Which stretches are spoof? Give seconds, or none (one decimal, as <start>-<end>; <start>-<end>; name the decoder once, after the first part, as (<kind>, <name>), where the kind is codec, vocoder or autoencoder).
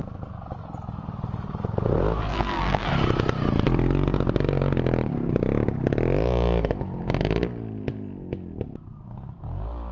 2.3-2.9 (vocoder, BigVGAN v2)